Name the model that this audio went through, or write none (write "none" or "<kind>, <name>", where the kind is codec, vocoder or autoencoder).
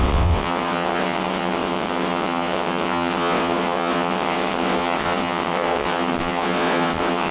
vocoder, WaveNeXt